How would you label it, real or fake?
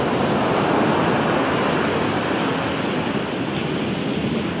real